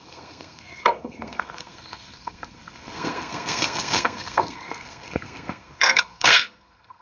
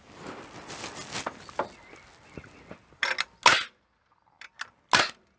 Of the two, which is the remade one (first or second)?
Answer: first